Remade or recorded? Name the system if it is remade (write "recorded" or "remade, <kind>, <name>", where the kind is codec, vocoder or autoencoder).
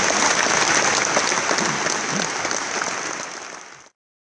recorded